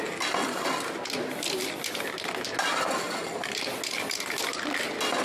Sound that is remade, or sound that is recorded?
recorded